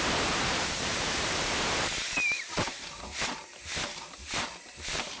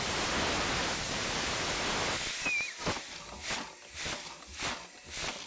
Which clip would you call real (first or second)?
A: second